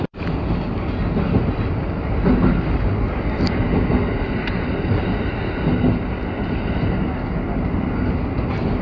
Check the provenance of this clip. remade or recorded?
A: recorded